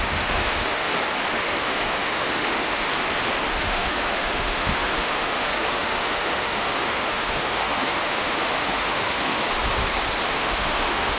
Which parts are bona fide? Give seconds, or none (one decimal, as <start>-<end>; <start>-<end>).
0.9-1.4; 2.9-3.5; 9.4-10.3